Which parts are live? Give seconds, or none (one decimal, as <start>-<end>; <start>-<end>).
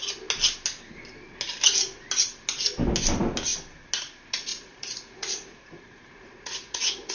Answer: 0.0-4.5